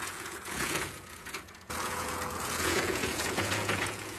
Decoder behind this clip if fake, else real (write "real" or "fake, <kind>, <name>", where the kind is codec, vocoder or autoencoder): fake, vocoder, Vocos